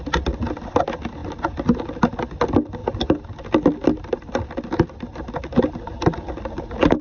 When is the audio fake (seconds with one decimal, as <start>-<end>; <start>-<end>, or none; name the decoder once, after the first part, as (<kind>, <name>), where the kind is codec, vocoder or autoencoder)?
none